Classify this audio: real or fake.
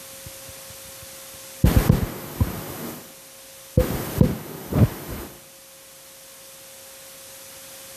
real